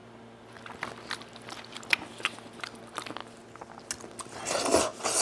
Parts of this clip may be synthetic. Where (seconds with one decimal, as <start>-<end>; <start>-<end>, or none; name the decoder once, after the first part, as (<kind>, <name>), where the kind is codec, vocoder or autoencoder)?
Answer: none

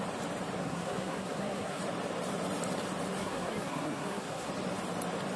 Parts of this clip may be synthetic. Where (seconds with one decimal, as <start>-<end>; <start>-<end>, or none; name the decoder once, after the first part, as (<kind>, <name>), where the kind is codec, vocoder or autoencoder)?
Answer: 0.6-1.8 (codec, SNAC); 3.2-4.5